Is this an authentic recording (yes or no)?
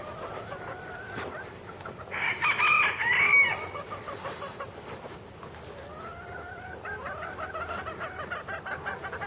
yes